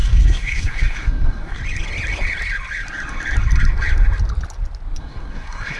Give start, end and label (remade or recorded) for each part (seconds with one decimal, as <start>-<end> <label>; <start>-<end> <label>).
0.0-1.6 remade; 1.6-5.0 recorded; 5.0-5.8 remade